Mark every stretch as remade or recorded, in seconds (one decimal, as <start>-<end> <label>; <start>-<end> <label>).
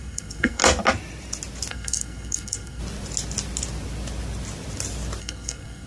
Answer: 0.0-0.6 remade; 0.6-1.7 recorded; 1.7-2.8 remade; 2.8-5.2 recorded; 5.2-5.9 remade